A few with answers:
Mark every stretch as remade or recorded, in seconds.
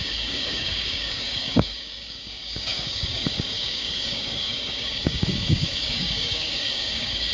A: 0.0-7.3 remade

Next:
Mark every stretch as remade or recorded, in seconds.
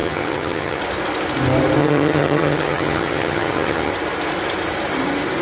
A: 0.0-0.8 remade; 0.8-1.8 recorded; 1.8-3.9 remade; 3.9-5.4 recorded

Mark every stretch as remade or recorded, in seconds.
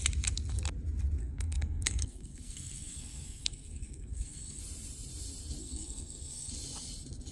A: 0.0-1.2 recorded; 1.2-4.6 remade; 4.6-5.6 recorded; 5.6-6.5 remade; 6.5-7.3 recorded